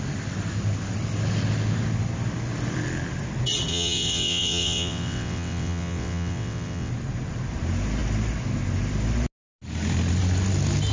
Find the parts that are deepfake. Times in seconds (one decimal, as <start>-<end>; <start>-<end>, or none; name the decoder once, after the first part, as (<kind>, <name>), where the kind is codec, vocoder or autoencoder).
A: 3.7-6.9 (vocoder, WaveNeXt)